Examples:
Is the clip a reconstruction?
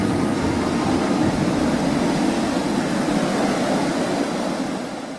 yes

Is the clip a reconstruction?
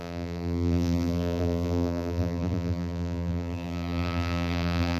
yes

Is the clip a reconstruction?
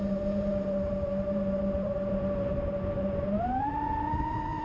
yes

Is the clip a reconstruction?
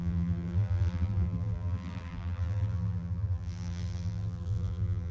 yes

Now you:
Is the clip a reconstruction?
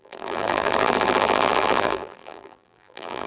yes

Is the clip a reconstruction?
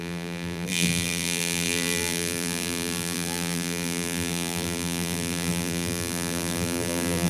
yes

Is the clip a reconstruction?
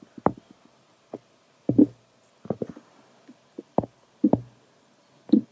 no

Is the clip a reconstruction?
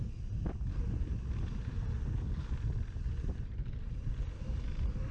no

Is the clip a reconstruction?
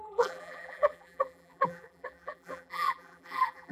yes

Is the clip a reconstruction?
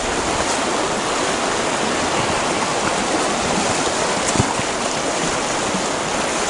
no